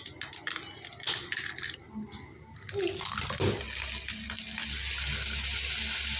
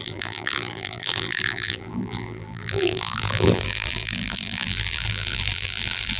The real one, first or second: first